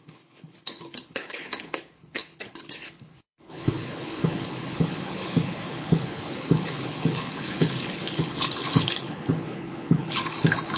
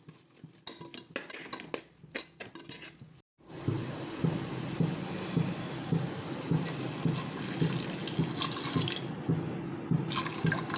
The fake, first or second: first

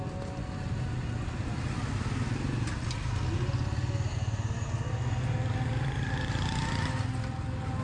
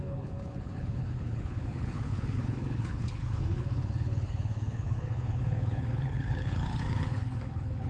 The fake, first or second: second